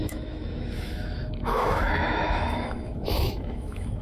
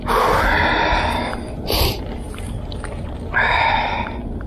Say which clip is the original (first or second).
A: second